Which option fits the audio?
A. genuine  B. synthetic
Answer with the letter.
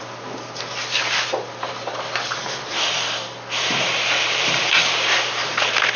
B